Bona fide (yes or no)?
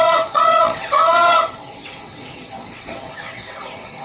no